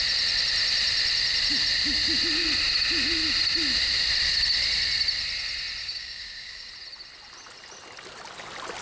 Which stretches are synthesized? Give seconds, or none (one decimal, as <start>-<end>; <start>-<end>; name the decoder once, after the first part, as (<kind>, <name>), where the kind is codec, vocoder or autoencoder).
5.8-6.7 (codec, DAC)